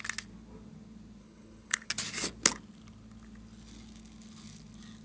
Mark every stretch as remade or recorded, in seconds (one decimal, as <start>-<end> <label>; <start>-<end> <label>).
0.0-1.2 recorded; 1.2-1.9 remade; 1.9-5.0 recorded

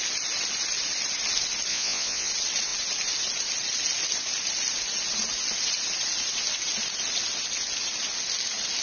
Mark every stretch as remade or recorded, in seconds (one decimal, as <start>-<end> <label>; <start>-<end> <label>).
0.0-1.7 recorded; 1.7-2.3 remade; 2.3-8.8 recorded

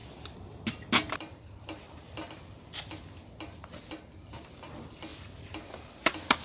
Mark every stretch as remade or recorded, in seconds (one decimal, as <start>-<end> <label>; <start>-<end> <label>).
0.0-3.8 remade; 3.8-5.1 recorded; 5.1-6.4 remade

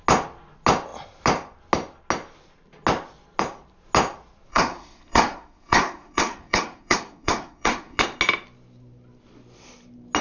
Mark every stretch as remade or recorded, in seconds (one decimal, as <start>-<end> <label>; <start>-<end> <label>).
0.0-4.5 recorded; 4.5-8.0 remade; 8.0-10.2 recorded

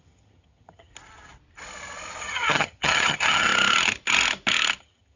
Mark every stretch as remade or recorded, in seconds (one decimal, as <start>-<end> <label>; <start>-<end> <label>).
0.0-0.9 remade; 0.9-2.2 recorded; 2.2-3.5 remade; 3.5-4.8 recorded; 4.8-5.2 remade